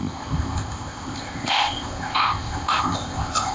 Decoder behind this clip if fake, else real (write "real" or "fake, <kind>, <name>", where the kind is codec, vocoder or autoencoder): fake, codec, ZipCodec